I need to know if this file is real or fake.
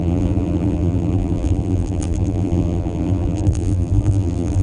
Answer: fake